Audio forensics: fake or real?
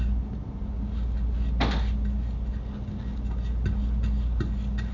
real